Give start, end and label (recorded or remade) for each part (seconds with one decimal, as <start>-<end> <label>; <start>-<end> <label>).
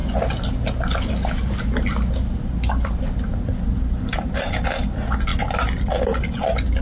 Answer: 0.0-5.3 recorded; 5.3-5.9 remade; 5.9-6.8 recorded